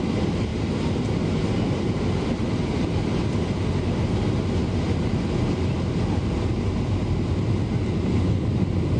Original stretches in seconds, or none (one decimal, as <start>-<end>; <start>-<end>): 0.0-9.0

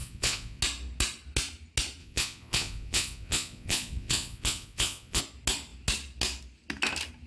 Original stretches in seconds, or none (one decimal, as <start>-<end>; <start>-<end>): 0.6-2.0; 5.2-7.3

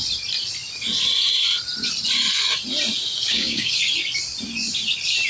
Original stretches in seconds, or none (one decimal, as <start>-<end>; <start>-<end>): 0.0-3.3; 3.8-5.3

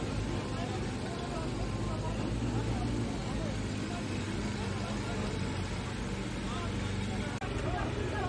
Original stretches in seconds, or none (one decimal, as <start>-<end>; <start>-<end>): 0.0-8.3

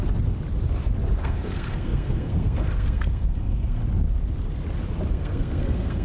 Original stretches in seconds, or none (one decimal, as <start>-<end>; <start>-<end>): 0.0-1.2; 3.8-5.1